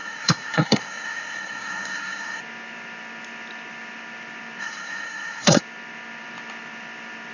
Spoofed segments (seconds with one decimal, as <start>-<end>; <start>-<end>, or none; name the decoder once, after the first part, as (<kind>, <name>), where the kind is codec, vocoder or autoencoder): 0.0-2.4 (codec, SNAC); 4.6-5.6